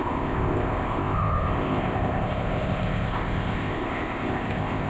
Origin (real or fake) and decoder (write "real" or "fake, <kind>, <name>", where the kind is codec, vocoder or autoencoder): fake, codec, ZipCodec